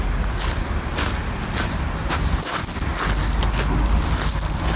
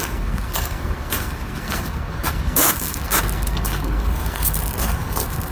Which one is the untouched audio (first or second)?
first